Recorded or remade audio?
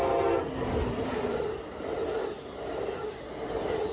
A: recorded